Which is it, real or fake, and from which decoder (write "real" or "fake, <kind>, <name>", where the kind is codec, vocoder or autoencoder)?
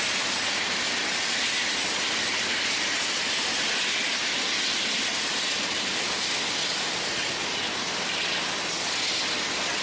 real